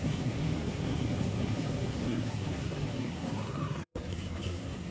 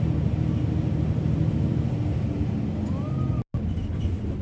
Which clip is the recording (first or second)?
second